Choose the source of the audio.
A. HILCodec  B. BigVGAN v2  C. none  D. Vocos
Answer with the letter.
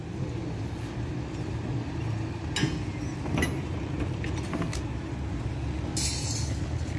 C